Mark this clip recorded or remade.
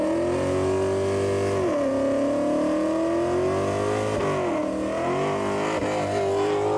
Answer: recorded